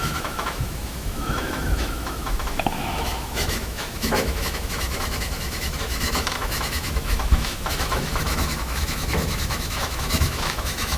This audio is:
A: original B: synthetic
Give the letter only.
B